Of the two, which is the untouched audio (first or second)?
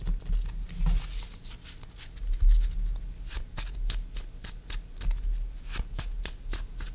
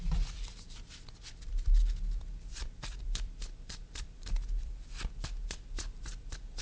first